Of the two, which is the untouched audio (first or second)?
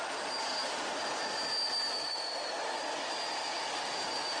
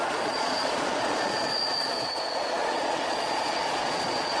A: first